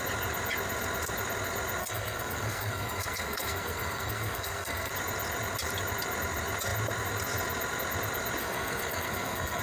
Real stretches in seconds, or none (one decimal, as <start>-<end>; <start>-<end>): 0.0-1.8; 4.9-8.4

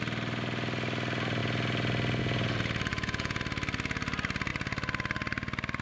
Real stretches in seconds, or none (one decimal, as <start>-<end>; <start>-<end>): 0.0-2.9; 3.4-5.8

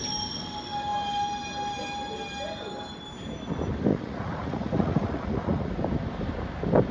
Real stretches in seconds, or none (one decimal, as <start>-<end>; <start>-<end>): 0.0-3.9; 5.7-6.9